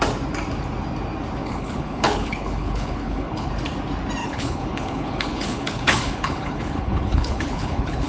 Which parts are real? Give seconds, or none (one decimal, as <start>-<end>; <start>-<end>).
0.0-1.4; 3.5-4.2